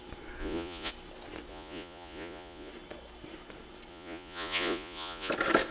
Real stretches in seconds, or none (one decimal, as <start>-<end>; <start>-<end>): 0.0-0.4; 0.9-1.5; 2.7-3.9; 5.3-5.7